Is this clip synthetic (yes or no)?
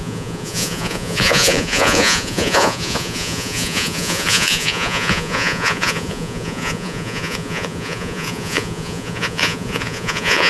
yes